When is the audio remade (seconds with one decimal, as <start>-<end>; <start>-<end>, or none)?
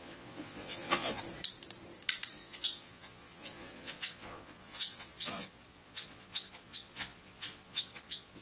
0.0-1.2; 2.3-8.4